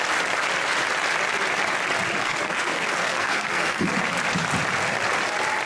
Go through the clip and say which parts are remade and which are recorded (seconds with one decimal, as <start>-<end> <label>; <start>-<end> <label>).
0.0-2.2 recorded; 2.2-3.9 remade; 3.9-5.7 recorded